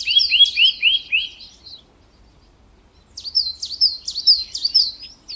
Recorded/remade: recorded